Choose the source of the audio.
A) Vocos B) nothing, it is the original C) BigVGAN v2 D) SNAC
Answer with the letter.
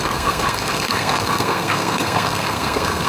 D